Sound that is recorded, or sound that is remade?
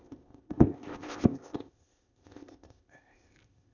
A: remade